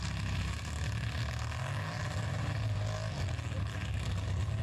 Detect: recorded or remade recorded